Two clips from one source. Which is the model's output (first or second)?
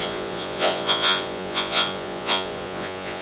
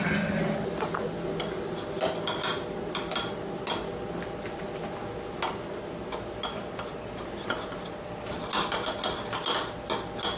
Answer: first